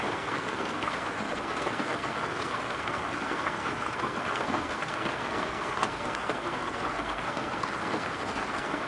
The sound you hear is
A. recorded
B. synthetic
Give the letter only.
B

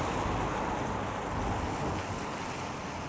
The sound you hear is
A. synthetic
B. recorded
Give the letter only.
B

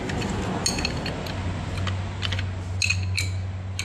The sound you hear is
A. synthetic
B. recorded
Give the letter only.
B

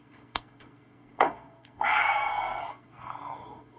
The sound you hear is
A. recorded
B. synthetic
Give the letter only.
B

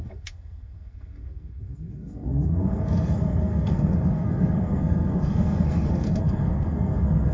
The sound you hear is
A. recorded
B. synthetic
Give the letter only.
B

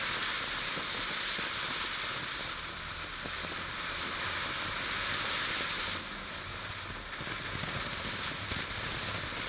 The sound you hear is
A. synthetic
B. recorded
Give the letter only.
B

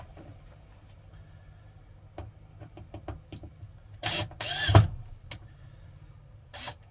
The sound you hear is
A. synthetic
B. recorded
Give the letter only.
B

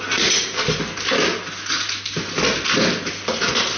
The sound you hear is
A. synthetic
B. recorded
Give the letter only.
B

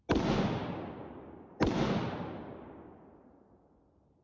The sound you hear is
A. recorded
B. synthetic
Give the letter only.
A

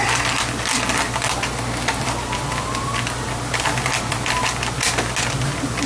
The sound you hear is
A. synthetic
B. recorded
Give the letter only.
B